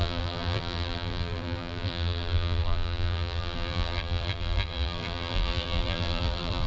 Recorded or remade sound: remade